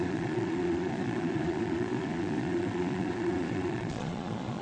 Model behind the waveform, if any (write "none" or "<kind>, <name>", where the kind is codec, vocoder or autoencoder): vocoder, Vocos